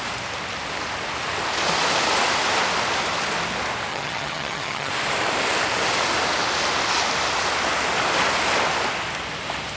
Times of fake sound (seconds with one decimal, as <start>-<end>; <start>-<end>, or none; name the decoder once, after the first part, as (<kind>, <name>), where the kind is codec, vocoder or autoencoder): 3.9-4.9 (vocoder, HiFi-GAN)